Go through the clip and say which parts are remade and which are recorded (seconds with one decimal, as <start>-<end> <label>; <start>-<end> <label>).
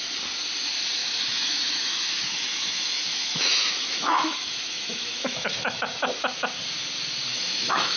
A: 0.0-1.0 recorded; 1.0-5.8 remade; 5.8-7.3 recorded; 7.3-8.0 remade